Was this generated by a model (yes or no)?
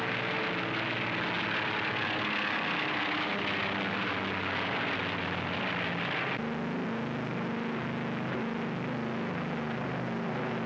no